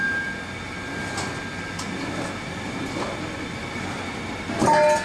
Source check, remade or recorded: recorded